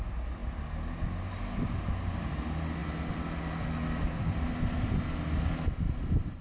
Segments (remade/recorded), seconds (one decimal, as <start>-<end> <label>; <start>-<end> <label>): 0.0-6.4 recorded